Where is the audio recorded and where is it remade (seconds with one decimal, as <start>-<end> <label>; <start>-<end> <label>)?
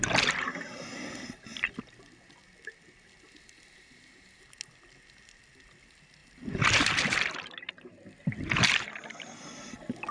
0.0-10.1 recorded